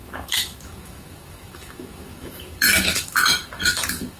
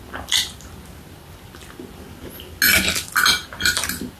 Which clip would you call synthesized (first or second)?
first